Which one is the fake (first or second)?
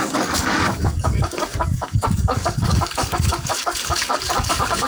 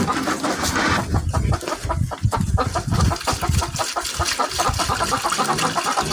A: first